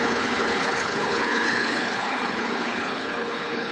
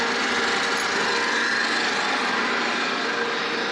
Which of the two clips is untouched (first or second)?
second